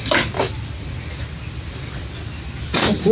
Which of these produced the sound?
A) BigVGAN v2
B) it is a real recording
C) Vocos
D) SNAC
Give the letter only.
B